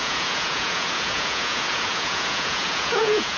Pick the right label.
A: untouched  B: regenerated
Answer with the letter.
B